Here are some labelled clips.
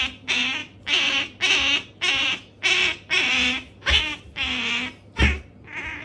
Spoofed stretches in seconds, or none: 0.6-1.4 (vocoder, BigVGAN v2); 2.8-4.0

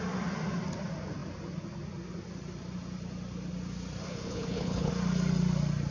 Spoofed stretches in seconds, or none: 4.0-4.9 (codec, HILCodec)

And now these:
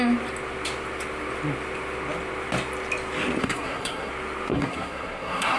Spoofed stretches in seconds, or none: 3.4-4.1 (codec, SNAC); 4.5-5.6

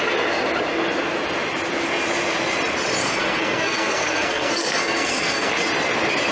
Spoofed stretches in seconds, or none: 3.0-5.5 (codec, SNAC)

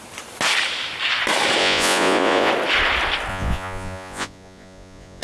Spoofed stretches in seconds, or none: 1.6-2.5 (vocoder, Vocos); 3.3-5.2

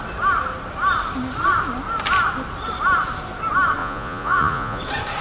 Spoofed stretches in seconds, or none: 3.8-4.8 (vocoder, Vocos)

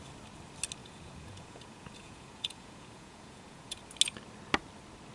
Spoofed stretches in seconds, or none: 0.8-3.8 (vocoder, Vocos)